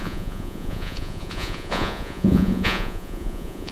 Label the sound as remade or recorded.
remade